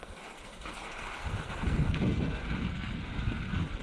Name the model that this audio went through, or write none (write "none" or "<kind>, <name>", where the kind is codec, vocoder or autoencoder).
codec, SNAC